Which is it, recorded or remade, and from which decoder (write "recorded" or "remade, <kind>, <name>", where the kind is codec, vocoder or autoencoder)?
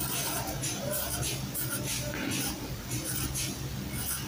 recorded